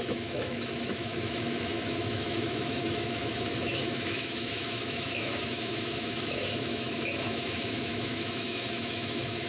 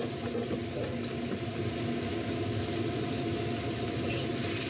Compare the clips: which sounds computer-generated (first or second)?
first